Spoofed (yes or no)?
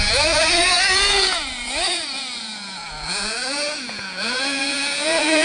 yes